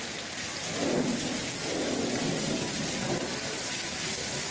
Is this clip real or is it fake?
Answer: real